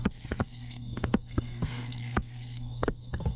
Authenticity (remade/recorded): remade